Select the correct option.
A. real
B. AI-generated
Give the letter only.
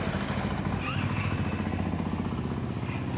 A